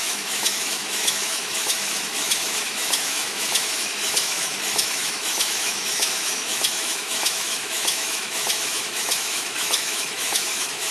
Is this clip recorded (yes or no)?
no